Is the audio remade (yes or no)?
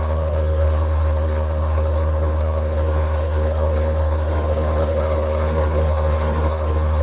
yes